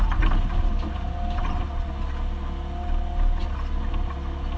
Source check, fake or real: real